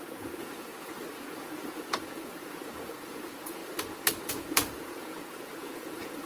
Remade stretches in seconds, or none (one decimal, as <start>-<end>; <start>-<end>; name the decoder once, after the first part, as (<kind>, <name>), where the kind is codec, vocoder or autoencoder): 0.0-3.6 (vocoder, Vocos); 4.3-6.3